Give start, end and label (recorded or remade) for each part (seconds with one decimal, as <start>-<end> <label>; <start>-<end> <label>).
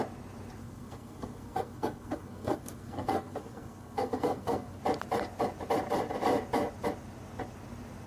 0.0-0.6 recorded; 0.6-4.8 remade; 4.8-8.1 recorded